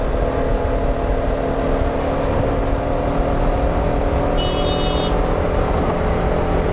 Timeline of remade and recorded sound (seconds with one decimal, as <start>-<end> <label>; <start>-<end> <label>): 0.0-6.7 recorded